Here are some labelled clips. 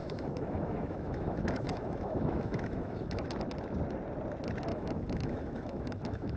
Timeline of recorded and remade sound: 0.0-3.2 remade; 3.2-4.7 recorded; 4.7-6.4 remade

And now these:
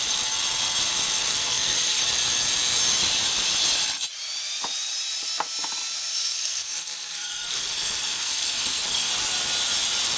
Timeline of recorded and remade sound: 0.0-1.3 recorded; 1.3-2.0 remade; 2.0-6.1 recorded; 6.1-9.1 remade; 9.1-10.2 recorded

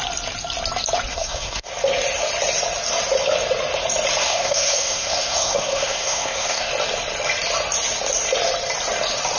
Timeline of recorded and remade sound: 0.0-1.1 recorded; 1.1-1.7 remade; 1.7-4.2 recorded; 4.2-6.7 remade; 6.7-9.4 recorded

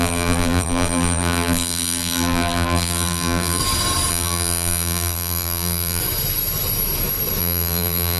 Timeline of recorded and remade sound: 0.0-3.6 remade; 3.6-4.1 recorded; 4.1-6.0 remade; 6.0-7.4 recorded; 7.4-8.2 remade

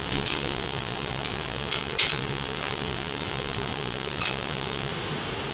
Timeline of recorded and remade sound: 0.0-4.9 remade; 4.9-5.5 recorded

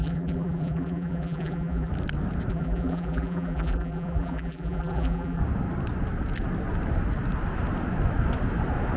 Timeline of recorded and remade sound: 0.0-1.9 remade; 1.9-2.5 recorded; 2.5-5.4 remade; 5.4-9.0 recorded